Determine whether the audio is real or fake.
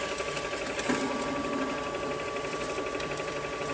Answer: real